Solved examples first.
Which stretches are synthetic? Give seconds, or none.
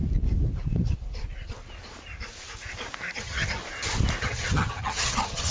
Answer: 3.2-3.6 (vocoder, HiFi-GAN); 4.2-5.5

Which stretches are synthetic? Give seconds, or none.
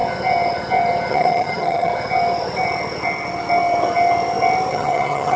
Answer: 1.1-1.9 (vocoder, HiFi-GAN); 4.7-5.4